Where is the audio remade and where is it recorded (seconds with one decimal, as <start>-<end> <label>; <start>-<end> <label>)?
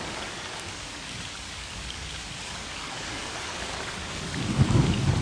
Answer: 0.0-5.2 remade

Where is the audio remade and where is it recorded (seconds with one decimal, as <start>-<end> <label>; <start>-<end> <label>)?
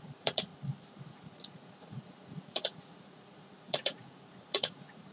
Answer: 0.0-0.5 remade; 0.5-1.0 recorded; 1.0-5.1 remade